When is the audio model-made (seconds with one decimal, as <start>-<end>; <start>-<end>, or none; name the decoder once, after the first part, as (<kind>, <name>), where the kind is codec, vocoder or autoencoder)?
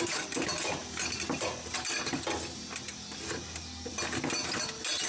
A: none